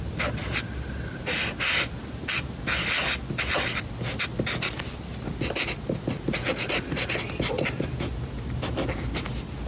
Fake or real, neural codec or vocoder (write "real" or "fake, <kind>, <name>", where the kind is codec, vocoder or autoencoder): real